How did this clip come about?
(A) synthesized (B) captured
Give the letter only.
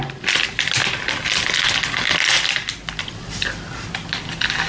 B